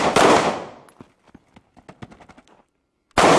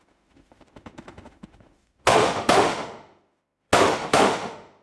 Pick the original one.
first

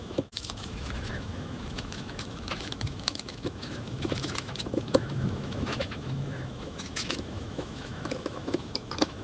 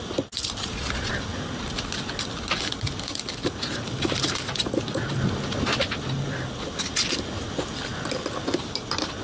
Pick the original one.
second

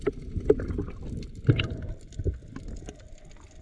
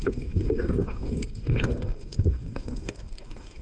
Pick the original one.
first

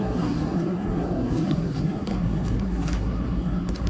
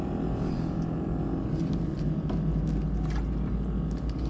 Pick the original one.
second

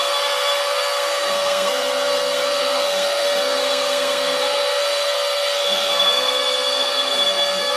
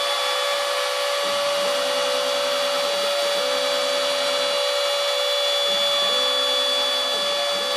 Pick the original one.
second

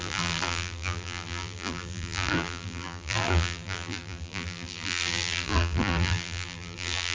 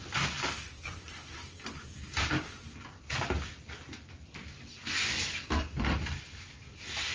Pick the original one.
second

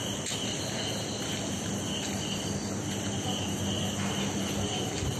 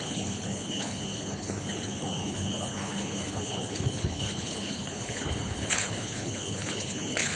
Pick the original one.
first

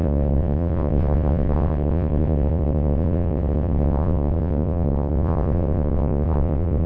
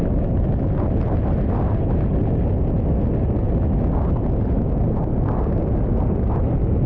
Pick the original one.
second